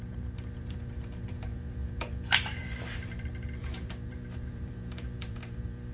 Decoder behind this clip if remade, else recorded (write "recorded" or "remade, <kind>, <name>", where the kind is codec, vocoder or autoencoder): remade, vocoder, BigVGAN v2